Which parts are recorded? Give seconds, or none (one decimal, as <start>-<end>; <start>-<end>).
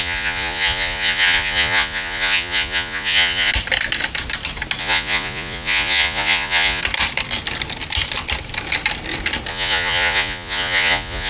3.5-4.8; 6.8-9.5